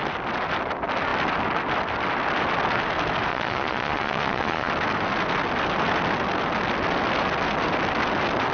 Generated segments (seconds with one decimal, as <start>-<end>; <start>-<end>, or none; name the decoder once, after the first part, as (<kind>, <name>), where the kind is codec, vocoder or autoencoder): 3.3-4.7 (vocoder, Vocos)